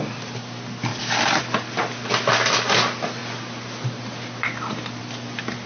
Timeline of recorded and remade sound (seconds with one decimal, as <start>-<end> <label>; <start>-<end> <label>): 0.0-5.7 recorded